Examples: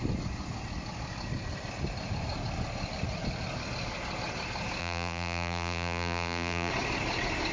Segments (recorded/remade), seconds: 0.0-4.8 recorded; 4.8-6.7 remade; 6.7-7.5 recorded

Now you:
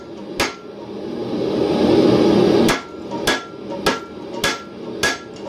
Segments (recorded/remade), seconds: 0.0-5.5 recorded

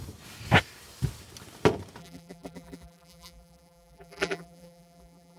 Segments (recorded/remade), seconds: 0.0-2.0 recorded; 2.0-5.4 remade

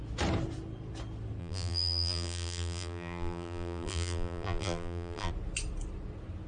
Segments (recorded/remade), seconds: 0.0-1.4 recorded; 1.4-5.3 remade; 5.3-6.5 recorded

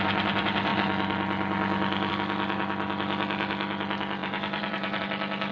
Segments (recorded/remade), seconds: 0.0-4.2 recorded; 4.2-5.0 remade; 5.0-5.5 recorded